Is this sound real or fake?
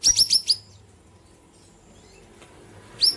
real